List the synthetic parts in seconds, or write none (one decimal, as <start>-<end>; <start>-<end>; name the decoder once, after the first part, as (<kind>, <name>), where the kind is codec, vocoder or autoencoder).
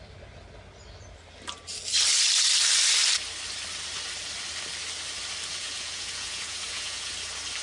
5.6-7.1 (vocoder, Vocos)